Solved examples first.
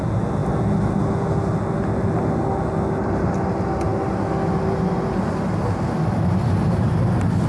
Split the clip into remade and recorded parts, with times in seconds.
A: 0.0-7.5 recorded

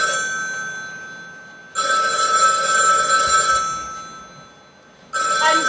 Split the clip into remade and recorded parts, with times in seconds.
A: 0.0-5.7 recorded

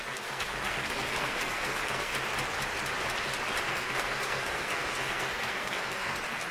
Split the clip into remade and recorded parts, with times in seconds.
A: 0.0-2.1 remade; 2.1-3.6 recorded; 3.6-6.5 remade

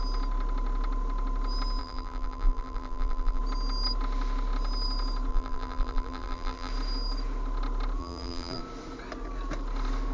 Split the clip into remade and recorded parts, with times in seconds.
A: 0.0-1.8 recorded; 1.8-3.4 remade; 3.4-5.3 recorded; 5.3-6.7 remade; 6.7-8.0 recorded; 8.0-8.6 remade; 8.6-10.1 recorded

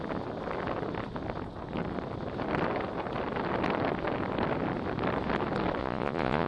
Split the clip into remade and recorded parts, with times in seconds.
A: 0.0-5.8 recorded; 5.8-6.5 remade

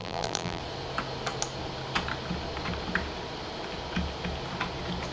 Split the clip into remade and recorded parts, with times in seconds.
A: 0.0-0.6 remade; 0.6-5.1 recorded

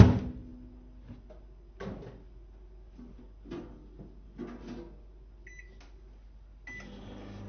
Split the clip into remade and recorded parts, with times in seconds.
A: 0.0-7.5 recorded